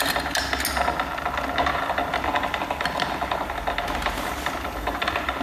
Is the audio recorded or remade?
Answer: recorded